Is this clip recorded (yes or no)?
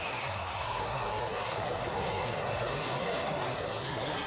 no